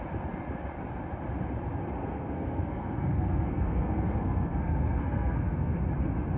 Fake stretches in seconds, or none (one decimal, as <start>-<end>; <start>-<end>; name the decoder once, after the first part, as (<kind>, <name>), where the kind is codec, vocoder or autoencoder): 2.0-5.8 (codec, SNAC)